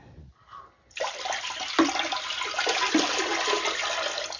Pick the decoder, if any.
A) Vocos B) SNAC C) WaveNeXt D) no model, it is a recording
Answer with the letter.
D